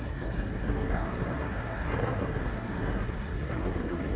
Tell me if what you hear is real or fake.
fake